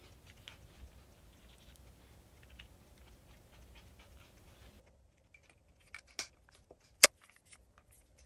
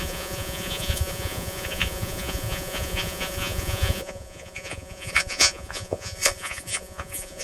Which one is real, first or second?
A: first